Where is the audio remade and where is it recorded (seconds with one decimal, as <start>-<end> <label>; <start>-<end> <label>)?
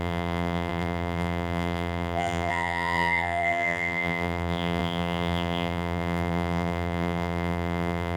0.0-8.2 remade